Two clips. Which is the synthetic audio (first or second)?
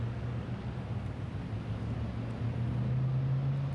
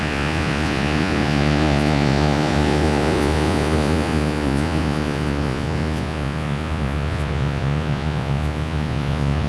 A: second